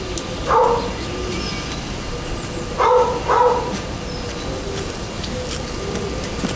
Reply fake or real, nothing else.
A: real